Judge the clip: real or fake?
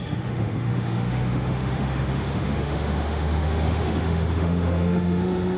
fake